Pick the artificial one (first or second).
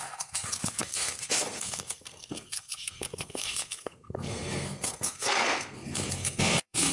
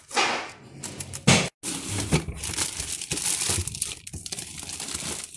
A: first